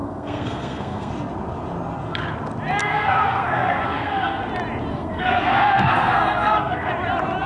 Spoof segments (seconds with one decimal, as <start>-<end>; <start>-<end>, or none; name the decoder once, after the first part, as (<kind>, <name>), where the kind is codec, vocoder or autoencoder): 0.0-1.1 (codec, SNAC); 2.8-4.4; 4.9-6.9

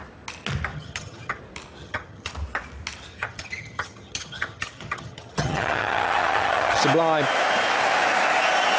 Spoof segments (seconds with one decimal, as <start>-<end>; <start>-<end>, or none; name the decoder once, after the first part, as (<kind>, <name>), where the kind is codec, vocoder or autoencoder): 0.7-1.4 (vocoder, HiFi-GAN); 1.8-2.3; 3.1-6.8

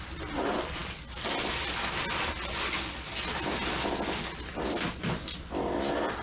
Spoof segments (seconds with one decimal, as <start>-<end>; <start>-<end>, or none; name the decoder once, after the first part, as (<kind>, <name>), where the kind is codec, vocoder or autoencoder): none

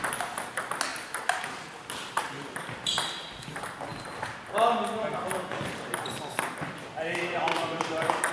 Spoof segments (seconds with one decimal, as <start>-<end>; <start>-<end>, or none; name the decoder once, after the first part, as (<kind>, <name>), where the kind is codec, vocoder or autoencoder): 0.9-3.5 (vocoder, BigVGAN v2); 7.5-8.3

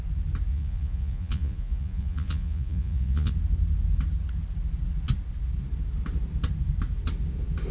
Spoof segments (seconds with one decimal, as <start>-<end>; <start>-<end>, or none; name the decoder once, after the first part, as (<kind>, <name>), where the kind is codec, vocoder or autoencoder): 0.5-3.3 (vocoder, Vocos)